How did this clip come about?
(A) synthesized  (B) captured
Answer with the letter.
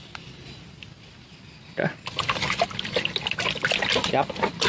B